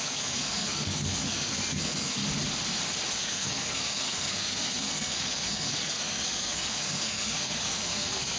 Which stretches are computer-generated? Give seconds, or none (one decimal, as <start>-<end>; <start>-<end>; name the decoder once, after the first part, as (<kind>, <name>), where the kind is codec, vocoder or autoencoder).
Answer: 0.0-2.2 (codec, SNAC); 3.2-8.4